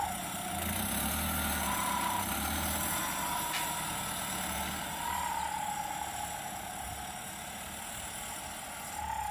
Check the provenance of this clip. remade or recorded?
recorded